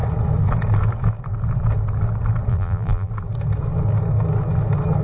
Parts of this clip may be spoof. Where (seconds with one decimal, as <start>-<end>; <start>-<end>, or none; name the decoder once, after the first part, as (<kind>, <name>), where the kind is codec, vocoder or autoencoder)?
2.5-3.1 (vocoder, BigVGAN v2)